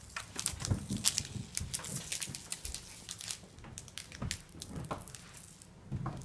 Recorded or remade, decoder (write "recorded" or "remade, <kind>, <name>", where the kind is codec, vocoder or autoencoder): recorded